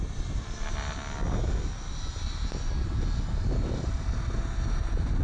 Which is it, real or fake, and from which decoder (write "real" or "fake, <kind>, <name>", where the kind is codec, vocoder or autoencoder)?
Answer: real